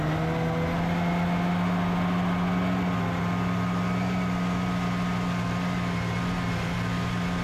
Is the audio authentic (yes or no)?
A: yes